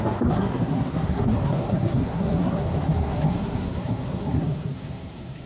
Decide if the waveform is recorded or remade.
remade